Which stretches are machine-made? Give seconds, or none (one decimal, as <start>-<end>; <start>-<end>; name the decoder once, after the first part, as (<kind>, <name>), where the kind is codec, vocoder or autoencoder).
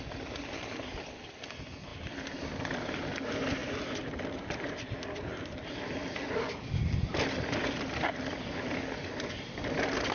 none